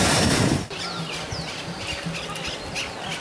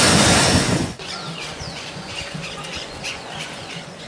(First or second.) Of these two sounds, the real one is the first